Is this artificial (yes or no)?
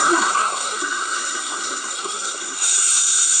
yes